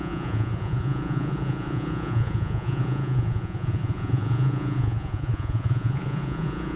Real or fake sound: fake